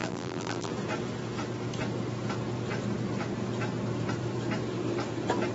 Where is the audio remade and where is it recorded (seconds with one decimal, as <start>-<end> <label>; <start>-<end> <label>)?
0.0-0.7 remade; 0.7-5.5 recorded